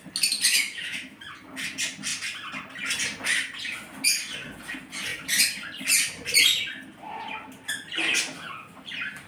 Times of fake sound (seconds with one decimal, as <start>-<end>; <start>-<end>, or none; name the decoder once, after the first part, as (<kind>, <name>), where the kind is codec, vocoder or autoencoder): 0.5-1.2 (autoencoder, DAC-VAE)